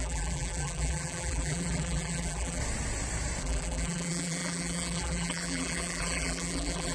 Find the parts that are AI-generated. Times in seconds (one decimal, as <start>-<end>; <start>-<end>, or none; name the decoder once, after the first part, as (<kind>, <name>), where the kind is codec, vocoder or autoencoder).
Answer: 0.0-2.6 (vocoder, BigVGAN v2); 3.4-6.9